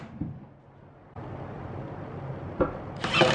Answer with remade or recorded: recorded